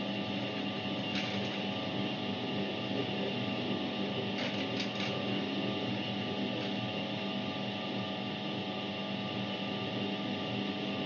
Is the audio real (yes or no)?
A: yes